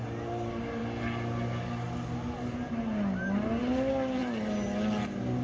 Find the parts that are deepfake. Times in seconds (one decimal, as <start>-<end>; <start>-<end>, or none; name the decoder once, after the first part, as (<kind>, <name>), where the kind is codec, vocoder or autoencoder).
none